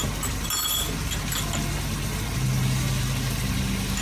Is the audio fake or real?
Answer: real